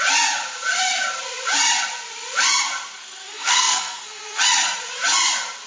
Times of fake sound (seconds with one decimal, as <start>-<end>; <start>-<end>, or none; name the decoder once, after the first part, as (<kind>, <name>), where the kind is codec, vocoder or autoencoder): 3.0-4.4 (codec, SNAC)